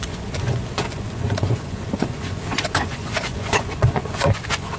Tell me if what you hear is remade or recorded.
remade